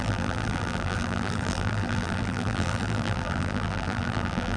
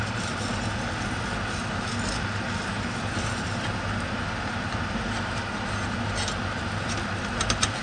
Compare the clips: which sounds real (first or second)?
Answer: second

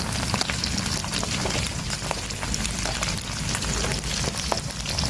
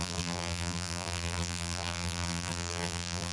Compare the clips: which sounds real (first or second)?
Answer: first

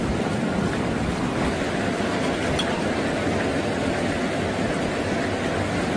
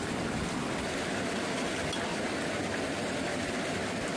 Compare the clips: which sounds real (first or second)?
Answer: second